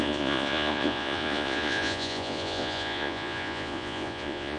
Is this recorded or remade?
remade